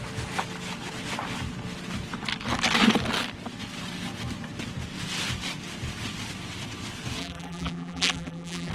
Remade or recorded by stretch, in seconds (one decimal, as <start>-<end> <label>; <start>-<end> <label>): 0.0-7.2 recorded; 7.2-8.7 remade